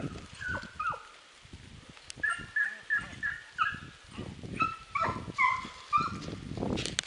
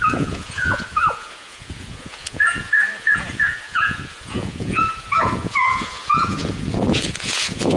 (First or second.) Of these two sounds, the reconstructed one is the second